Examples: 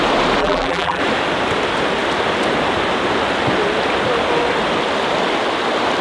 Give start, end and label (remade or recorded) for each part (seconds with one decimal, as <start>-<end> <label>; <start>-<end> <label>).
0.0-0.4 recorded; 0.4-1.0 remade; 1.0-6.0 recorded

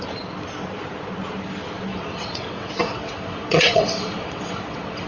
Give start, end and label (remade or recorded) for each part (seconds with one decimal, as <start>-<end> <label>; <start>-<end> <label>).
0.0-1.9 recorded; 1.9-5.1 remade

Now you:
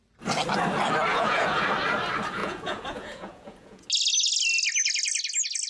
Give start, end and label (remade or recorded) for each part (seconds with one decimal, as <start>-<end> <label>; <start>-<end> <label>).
0.0-1.1 recorded; 1.1-1.6 remade; 1.6-2.4 recorded; 2.4-3.9 remade; 3.9-5.7 recorded

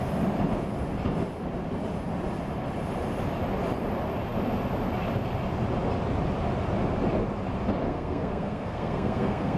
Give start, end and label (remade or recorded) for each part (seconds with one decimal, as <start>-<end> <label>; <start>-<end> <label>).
0.0-7.9 recorded; 7.9-9.6 remade

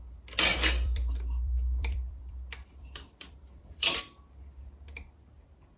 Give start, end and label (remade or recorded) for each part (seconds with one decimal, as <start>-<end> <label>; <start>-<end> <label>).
0.0-0.5 recorded; 0.5-4.0 remade; 4.0-5.8 recorded

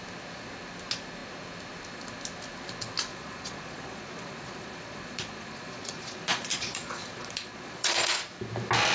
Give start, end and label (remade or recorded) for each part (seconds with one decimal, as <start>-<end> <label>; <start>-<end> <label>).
0.0-3.1 recorded; 3.1-8.2 remade; 8.2-8.9 recorded

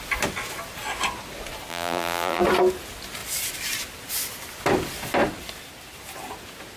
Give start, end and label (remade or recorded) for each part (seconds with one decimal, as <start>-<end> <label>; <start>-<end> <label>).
0.0-1.7 recorded; 1.7-2.4 remade; 2.4-6.8 recorded